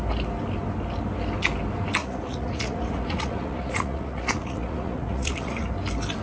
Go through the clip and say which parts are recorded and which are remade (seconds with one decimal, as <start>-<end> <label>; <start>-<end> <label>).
0.0-2.0 recorded; 2.0-5.7 remade; 5.7-6.2 recorded